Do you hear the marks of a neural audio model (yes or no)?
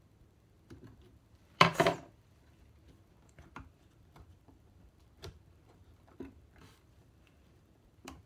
yes